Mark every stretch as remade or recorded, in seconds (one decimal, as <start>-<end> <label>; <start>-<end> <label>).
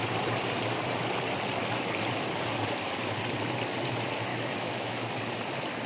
0.0-4.3 recorded; 4.3-5.1 remade; 5.1-5.9 recorded